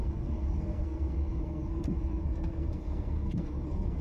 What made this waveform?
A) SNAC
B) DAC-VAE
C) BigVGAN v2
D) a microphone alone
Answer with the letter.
A